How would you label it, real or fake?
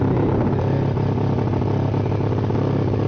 real